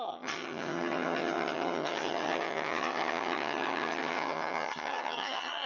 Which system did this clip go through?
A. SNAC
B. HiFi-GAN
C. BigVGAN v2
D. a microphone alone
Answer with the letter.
B